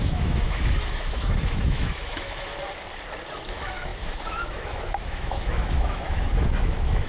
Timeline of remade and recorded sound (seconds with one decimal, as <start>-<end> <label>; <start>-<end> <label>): 0.0-2.5 remade; 2.5-3.4 recorded; 3.4-7.1 remade